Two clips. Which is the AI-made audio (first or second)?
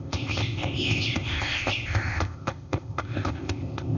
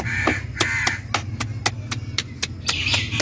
first